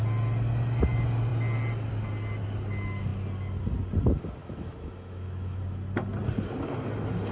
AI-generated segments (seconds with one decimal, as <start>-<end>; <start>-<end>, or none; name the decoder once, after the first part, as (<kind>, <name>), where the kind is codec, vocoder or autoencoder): 4.4-5.6 (autoencoder, DAC-VAE)